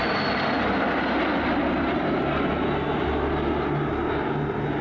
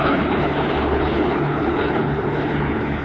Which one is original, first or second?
first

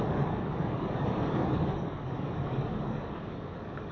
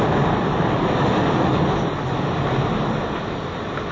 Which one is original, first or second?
second